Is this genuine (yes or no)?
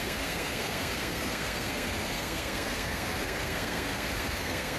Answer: no